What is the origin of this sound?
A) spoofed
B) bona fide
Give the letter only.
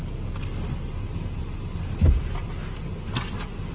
B